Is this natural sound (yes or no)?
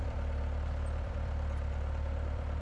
no